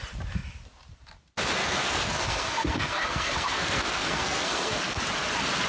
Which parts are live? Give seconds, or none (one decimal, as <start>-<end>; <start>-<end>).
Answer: 0.0-1.6; 5.0-5.7